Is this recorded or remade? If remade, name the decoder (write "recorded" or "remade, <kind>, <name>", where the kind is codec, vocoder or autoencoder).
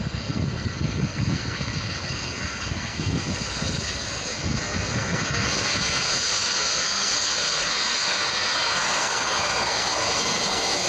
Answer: remade, codec, SNAC